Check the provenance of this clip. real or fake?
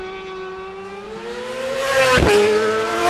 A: real